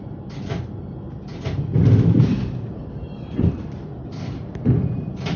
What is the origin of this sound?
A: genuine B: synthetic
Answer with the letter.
A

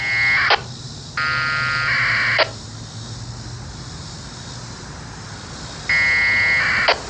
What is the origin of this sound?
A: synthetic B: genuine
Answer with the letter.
B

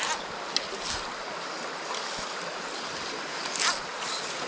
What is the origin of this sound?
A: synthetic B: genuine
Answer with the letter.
B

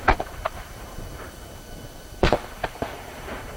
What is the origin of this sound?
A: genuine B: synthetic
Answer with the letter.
B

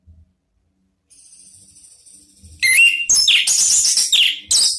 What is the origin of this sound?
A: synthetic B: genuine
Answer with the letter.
B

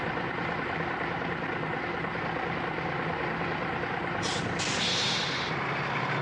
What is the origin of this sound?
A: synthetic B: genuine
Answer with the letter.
B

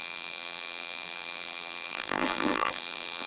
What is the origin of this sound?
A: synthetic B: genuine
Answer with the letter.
A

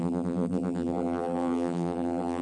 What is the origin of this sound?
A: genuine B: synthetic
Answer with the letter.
B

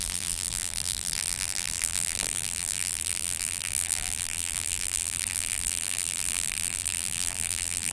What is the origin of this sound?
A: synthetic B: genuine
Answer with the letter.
A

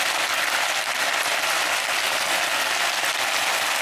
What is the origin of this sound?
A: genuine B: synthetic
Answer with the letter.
A